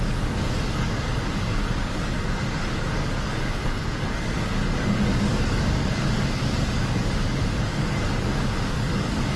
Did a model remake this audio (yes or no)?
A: yes